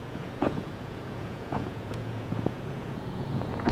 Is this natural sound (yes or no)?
no